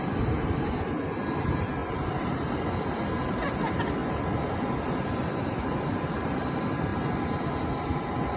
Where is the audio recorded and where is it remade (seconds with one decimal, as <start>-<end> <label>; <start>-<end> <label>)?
0.0-1.8 recorded; 1.8-2.7 remade; 2.7-4.0 recorded; 4.0-6.5 remade; 6.5-8.4 recorded